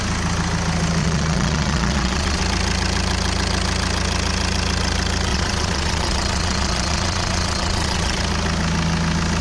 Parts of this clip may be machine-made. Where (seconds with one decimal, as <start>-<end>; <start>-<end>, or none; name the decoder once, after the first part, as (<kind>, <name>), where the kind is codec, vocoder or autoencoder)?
1.0-2.4 (vocoder, Vocos); 5.3-8.2